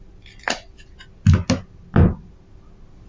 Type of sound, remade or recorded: recorded